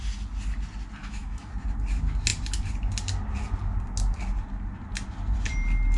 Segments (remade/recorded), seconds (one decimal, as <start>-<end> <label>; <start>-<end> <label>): 0.0-1.0 recorded; 1.0-1.5 remade; 1.5-6.0 recorded